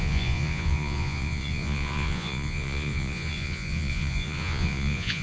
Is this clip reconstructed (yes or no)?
yes